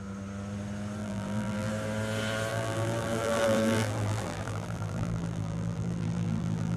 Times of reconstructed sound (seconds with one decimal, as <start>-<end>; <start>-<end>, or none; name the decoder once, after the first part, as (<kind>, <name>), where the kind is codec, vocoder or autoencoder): 1.0-1.7 (vocoder, BigVGAN v2); 2.5-6.8